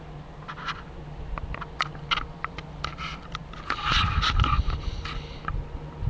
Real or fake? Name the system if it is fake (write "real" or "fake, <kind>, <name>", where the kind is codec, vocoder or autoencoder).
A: real